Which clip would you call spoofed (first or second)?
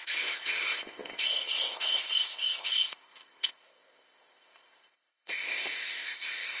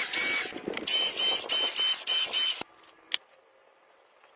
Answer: first